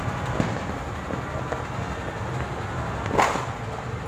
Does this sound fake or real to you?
real